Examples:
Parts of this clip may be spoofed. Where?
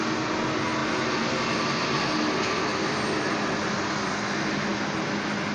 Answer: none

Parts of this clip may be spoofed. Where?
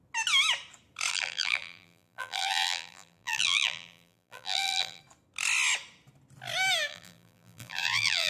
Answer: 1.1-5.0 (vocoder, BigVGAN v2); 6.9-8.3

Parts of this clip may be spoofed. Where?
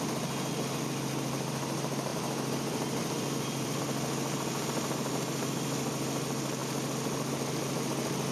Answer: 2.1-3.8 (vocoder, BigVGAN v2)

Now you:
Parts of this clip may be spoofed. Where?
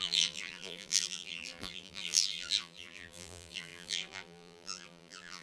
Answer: 0.0-5.4 (vocoder, BigVGAN v2)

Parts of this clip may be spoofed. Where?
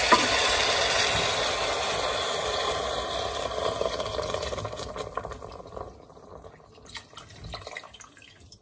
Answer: none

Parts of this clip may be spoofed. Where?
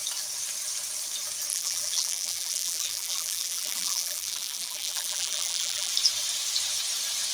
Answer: 1.5-5.9 (vocoder, BigVGAN v2)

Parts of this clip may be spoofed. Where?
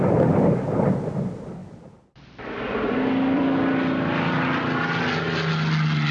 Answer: 1.6-5.0 (vocoder, BigVGAN v2)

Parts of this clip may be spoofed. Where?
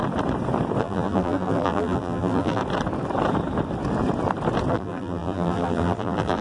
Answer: 0.8-2.6 (vocoder, BigVGAN v2); 4.7-6.4